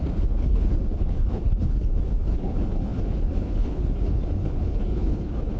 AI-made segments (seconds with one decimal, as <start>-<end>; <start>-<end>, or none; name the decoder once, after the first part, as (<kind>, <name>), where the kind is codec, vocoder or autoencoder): 0.0-5.6 (codec, HILCodec)